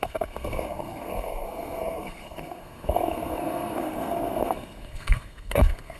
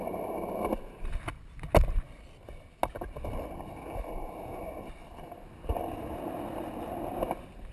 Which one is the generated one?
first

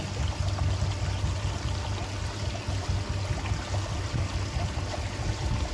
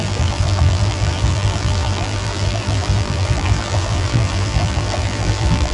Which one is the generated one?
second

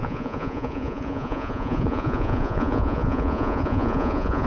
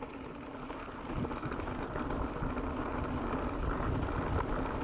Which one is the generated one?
first